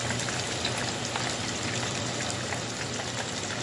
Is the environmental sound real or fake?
real